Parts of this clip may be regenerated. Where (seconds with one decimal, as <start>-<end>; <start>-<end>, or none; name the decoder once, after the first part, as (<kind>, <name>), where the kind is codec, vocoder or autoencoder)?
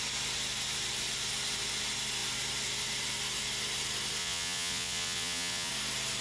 4.2-5.7 (vocoder, Vocos)